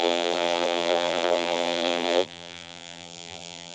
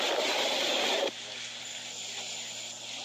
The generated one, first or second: first